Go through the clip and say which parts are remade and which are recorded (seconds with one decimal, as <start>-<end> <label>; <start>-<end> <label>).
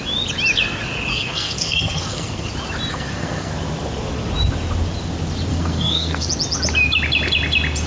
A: 0.0-1.1 recorded; 1.1-2.5 remade; 2.5-2.9 recorded; 2.9-3.5 remade; 3.5-5.5 recorded; 5.5-6.3 remade; 6.3-7.9 recorded